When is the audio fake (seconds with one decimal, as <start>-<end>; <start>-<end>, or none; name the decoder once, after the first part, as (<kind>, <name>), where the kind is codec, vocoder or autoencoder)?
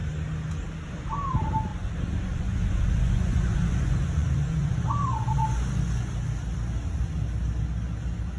1.7-6.1 (vocoder, Vocos)